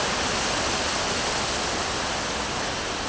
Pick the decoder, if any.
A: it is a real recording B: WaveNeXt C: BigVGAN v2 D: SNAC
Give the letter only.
A